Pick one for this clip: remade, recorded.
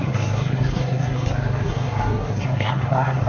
remade